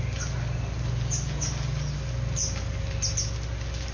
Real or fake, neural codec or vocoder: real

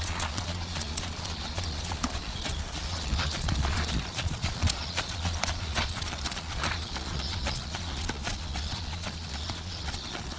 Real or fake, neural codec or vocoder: fake, vocoder, Vocos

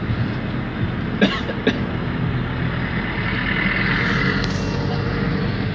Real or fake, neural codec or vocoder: real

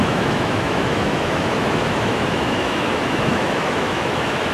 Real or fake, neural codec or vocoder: fake, autoencoder, DAC-VAE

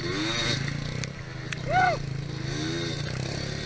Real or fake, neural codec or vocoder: real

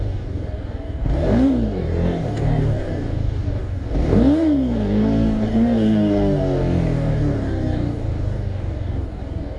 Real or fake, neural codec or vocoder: fake, codec, DAC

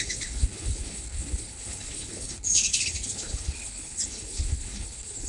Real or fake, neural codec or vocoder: fake, codec, HILCodec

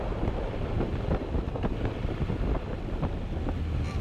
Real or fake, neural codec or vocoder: real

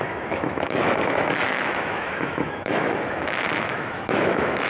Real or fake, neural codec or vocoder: fake, autoencoder, DAC-VAE